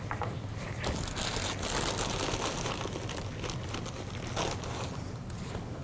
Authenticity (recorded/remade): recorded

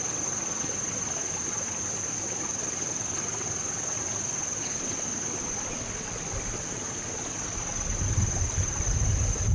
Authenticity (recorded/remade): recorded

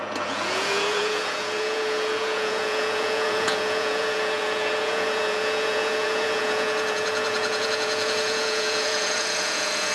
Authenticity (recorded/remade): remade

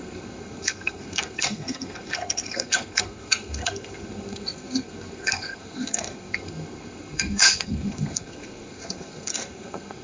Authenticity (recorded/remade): remade